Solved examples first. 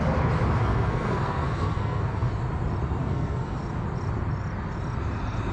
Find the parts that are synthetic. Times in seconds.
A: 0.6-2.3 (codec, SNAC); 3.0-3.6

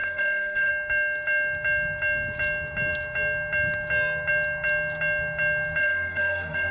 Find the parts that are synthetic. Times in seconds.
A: 0.0-0.7 (autoencoder, DAC-VAE); 5.8-6.7

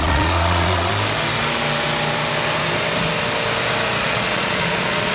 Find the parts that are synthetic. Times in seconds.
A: 0.0-0.9 (vocoder, Vocos); 4.0-5.1

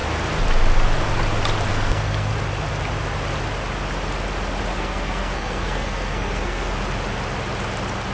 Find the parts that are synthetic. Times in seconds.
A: 1.7-2.3 (codec, SNAC); 4.7-6.8

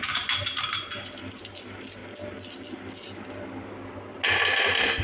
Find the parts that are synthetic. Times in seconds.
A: 0.0-2.0 (vocoder, BigVGAN v2)

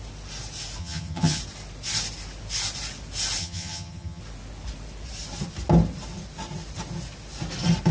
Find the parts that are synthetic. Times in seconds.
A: 0.8-1.4 (vocoder, HiFi-GAN); 3.4-4.2